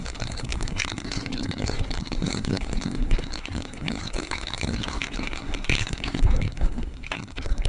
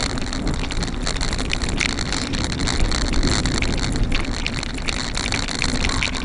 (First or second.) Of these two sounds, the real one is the second